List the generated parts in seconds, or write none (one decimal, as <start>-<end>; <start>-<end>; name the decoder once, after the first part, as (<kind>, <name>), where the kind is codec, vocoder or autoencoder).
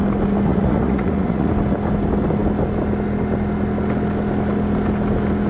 0.5-1.5 (vocoder, Vocos)